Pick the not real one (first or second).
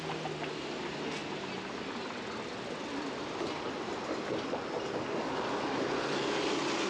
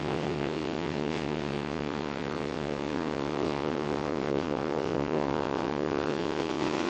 second